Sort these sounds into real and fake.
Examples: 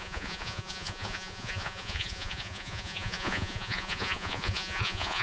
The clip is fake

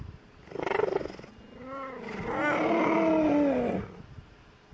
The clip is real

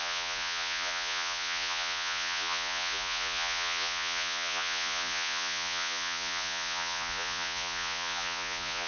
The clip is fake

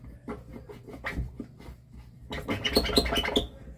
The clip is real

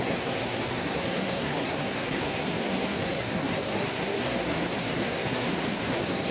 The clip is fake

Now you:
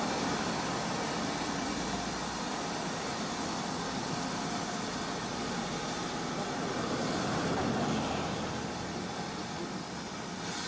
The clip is real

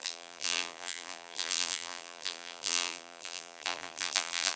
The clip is fake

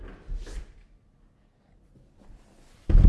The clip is real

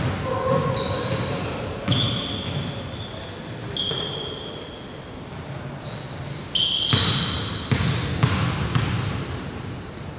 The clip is real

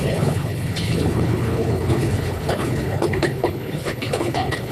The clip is fake